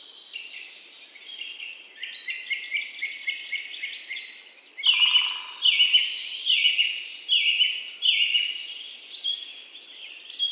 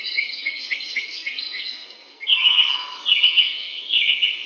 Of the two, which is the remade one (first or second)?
second